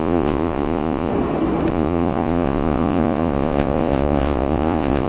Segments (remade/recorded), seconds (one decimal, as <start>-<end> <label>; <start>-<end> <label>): 0.0-1.1 remade; 1.1-1.7 recorded; 1.7-5.1 remade